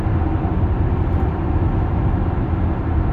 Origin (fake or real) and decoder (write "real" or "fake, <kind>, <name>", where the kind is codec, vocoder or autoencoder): real